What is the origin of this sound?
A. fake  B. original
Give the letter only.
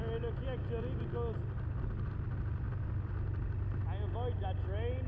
B